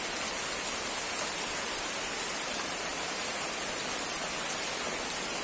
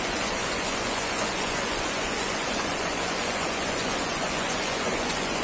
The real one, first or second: first